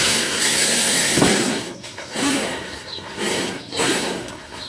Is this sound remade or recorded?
remade